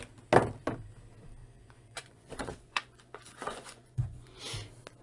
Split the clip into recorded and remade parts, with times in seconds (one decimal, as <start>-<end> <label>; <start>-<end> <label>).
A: 0.0-1.4 recorded; 1.4-4.4 remade; 4.4-5.0 recorded